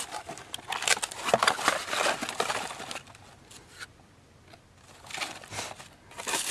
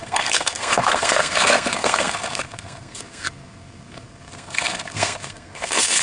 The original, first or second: first